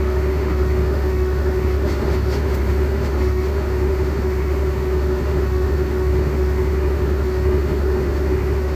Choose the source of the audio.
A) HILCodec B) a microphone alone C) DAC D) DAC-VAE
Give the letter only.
D